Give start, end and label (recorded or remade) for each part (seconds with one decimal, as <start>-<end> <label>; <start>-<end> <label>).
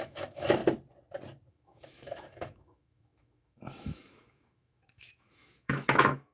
0.0-0.6 remade; 0.6-1.5 recorded; 1.5-6.3 remade